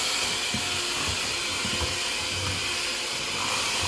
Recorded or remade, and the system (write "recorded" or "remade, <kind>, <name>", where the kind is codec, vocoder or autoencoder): recorded